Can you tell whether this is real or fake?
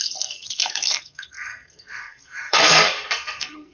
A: fake